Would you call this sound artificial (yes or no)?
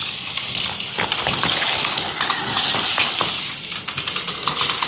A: no